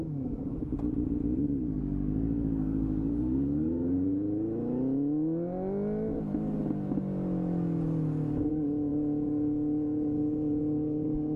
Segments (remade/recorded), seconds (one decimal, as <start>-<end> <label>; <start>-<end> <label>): 0.0-0.6 remade; 0.6-1.8 recorded; 1.8-4.1 remade; 4.1-8.5 recorded; 8.5-11.4 remade